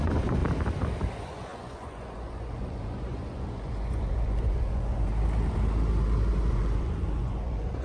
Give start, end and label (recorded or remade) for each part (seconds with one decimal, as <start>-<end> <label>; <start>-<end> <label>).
0.0-0.4 remade; 0.4-1.1 recorded; 1.1-5.1 remade; 5.1-6.3 recorded; 6.3-7.8 remade